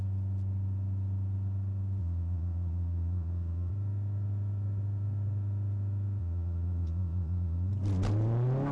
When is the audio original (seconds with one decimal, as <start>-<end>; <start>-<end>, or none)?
0.0-2.0; 3.7-6.2; 7.7-8.7